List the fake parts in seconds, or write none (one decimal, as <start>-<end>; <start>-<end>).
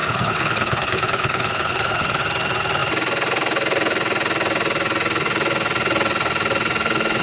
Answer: 0.0-2.2